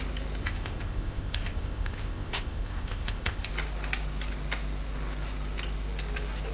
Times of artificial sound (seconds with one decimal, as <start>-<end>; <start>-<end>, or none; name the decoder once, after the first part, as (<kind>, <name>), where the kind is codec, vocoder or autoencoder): 0.4-3.5 (codec, ZipCodec)